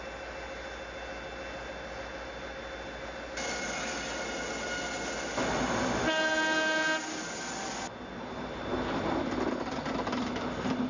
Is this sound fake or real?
real